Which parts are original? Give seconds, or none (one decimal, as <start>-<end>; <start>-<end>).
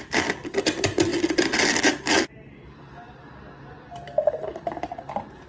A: 0.0-1.1; 4.4-5.5